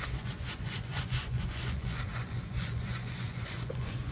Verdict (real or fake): fake